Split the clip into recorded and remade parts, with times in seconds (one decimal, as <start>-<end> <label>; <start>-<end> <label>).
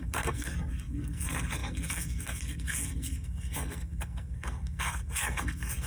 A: 0.0-5.9 remade